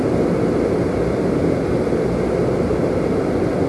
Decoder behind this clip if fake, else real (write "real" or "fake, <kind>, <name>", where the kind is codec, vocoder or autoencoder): real